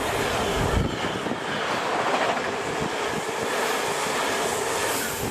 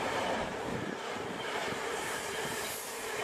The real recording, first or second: first